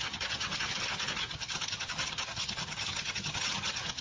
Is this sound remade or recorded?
remade